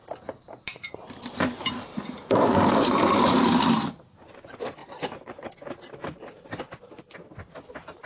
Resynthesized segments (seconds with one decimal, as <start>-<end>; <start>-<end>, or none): 0.0-4.1; 4.8-6.8